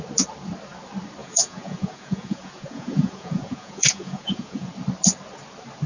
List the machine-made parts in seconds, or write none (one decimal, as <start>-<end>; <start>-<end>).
1.2-4.7